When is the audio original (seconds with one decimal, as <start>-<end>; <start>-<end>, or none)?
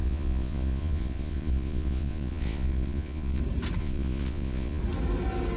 3.4-3.8; 4.8-5.6